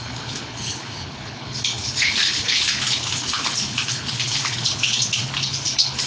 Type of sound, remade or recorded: remade